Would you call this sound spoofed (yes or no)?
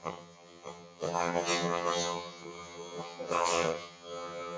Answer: yes